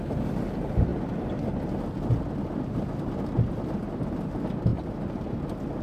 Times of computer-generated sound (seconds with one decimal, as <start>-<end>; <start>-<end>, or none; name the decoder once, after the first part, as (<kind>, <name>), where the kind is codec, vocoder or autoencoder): none